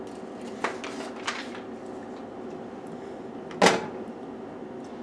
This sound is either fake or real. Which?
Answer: real